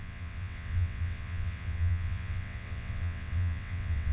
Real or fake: fake